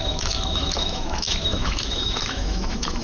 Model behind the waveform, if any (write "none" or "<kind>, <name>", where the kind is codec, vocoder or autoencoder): autoencoder, DAC-VAE